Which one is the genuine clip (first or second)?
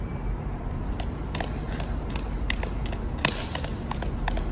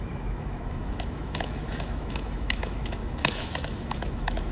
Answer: first